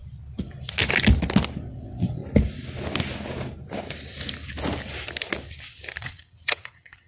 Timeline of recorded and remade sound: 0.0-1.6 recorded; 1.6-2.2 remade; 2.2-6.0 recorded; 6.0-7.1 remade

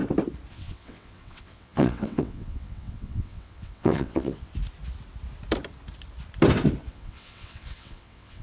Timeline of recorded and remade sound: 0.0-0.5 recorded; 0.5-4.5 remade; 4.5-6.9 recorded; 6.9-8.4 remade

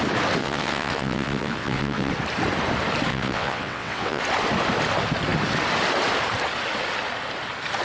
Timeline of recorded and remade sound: 0.0-0.4 recorded; 0.4-2.1 remade; 2.1-3.1 recorded; 3.1-4.2 remade; 4.2-7.8 recorded

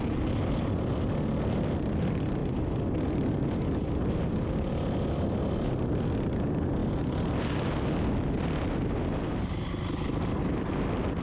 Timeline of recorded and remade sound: 0.0-11.2 recorded

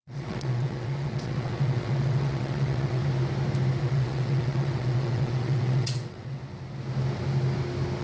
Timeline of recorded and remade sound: 0.0-3.0 remade; 3.0-3.8 recorded; 3.8-6.4 remade; 6.4-8.0 recorded

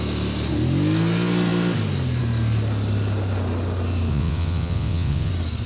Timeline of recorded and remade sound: 0.0-4.1 recorded; 4.1-5.3 remade; 5.3-5.7 recorded